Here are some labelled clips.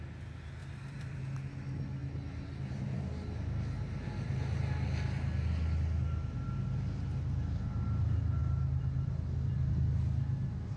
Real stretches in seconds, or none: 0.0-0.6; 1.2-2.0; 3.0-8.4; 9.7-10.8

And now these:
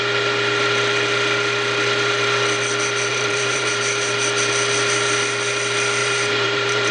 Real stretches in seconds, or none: 0.0-3.1; 3.7-6.0

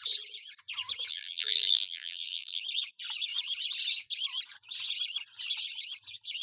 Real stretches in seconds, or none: 0.0-1.1; 2.6-6.4

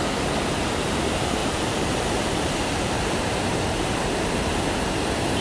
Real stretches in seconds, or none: 0.0-1.4; 4.6-5.4

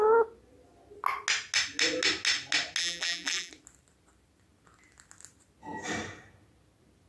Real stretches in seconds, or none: 0.0-2.8; 3.5-7.1

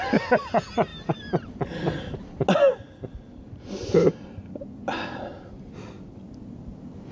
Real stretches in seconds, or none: 0.0-7.1

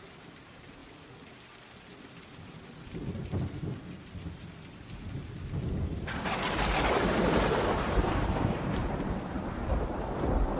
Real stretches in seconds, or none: 0.8-5.9